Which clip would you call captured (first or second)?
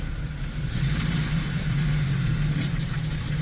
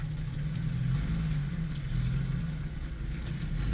second